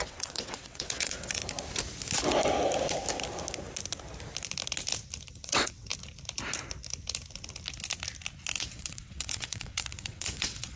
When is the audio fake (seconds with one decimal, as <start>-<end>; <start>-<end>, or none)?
0.0-1.4; 5.3-5.9; 8.6-10.8